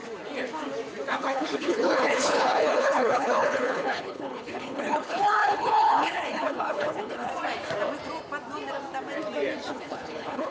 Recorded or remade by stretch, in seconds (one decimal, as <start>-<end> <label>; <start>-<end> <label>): 0.0-1.1 recorded; 1.1-7.3 remade; 7.3-9.7 recorded; 9.7-10.5 remade

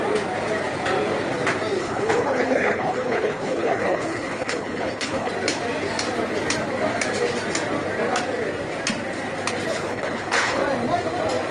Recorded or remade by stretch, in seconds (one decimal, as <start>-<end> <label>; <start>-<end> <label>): 0.0-1.8 recorded; 1.8-5.3 remade; 5.3-9.7 recorded; 9.7-10.6 remade; 10.6-11.5 recorded

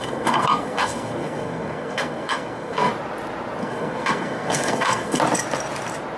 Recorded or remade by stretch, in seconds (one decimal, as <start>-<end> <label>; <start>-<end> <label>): 0.0-2.9 remade; 2.9-3.6 recorded; 3.6-5.2 remade; 5.2-6.2 recorded

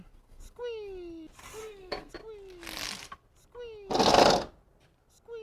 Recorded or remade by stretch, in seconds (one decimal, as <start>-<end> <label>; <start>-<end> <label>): 0.0-1.6 recorded; 1.6-2.1 remade; 2.1-5.4 recorded

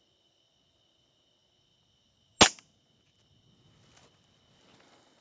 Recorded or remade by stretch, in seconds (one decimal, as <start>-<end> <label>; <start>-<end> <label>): 0.0-5.2 recorded

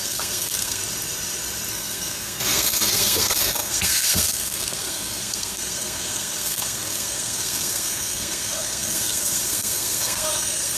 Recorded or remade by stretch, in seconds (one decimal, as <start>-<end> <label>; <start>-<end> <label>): 0.0-0.8 remade; 0.8-1.7 recorded; 1.7-10.8 remade

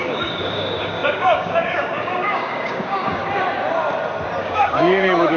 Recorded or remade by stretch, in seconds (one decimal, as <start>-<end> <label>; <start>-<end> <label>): 0.0-3.2 remade; 3.2-4.4 recorded; 4.4-5.4 remade